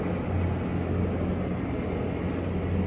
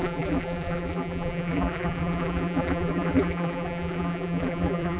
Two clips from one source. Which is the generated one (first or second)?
second